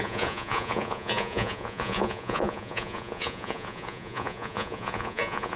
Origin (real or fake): fake